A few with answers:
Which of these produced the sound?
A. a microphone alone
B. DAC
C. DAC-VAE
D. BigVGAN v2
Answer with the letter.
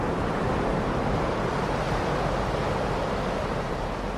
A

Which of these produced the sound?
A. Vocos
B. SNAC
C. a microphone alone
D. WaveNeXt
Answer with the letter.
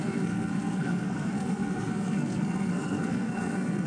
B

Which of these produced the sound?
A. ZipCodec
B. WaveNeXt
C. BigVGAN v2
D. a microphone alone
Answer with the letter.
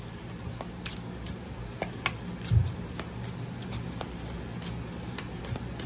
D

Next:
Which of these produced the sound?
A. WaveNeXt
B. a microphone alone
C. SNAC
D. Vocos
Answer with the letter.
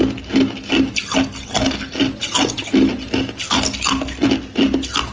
B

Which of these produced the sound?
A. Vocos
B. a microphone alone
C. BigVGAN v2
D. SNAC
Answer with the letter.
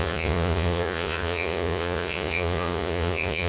A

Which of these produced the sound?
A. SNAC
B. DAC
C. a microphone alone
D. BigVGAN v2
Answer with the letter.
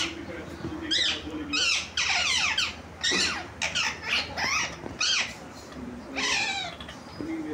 C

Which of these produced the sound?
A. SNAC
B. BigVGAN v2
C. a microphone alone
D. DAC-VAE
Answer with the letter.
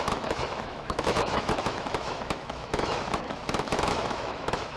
D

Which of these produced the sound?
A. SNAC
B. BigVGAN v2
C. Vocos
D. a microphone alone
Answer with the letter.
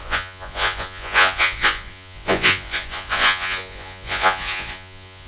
C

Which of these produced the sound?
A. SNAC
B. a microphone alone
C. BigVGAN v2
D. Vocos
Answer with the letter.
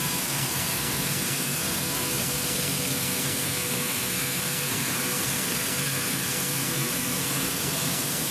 A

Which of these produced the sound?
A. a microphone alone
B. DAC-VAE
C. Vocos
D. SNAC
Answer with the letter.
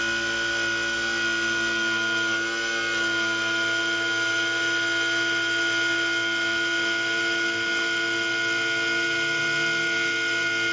A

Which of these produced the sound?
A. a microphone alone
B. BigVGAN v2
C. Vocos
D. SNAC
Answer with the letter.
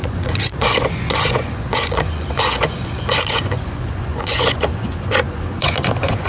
C